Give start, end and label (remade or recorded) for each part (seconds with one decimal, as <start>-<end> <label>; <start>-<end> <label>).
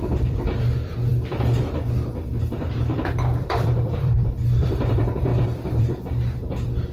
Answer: 0.0-1.1 remade; 1.1-2.3 recorded; 2.3-6.9 remade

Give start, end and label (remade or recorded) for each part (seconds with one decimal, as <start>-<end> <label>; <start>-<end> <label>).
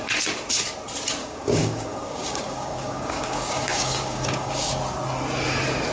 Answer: 0.0-1.2 recorded; 1.2-4.7 remade; 4.7-5.9 recorded